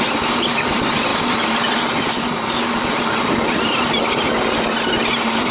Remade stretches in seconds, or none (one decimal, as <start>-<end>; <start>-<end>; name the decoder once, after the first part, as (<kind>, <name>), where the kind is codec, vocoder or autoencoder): none